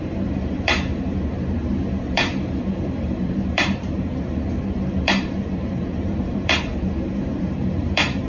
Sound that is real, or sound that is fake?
fake